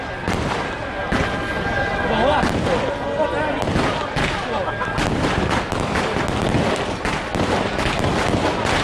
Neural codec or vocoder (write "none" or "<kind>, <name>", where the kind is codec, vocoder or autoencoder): none